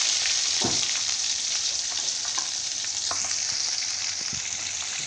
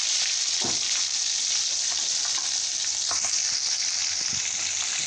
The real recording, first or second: second